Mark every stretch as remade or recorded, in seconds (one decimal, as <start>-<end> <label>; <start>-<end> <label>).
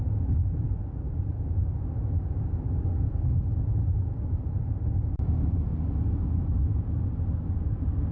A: 0.0-2.9 recorded; 2.9-3.5 remade; 3.5-8.1 recorded